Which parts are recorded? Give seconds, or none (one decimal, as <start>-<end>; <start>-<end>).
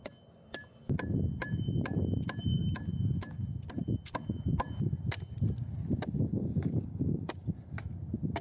0.0-6.4; 7.6-8.4